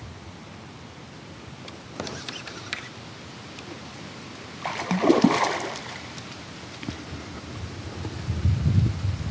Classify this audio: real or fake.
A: fake